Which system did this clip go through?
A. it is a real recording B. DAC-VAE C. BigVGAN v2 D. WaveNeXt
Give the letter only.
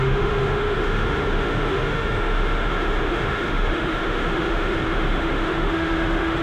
B